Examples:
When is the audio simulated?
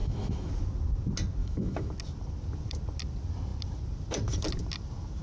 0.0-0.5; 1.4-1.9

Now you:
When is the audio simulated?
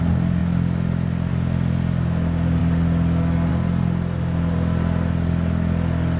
none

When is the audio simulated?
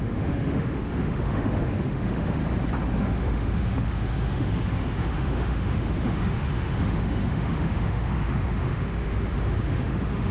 0.0-2.4; 3.0-10.3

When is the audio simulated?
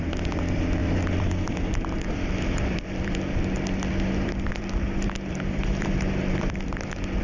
none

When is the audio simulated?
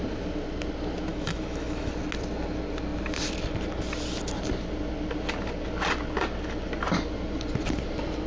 1.1-1.9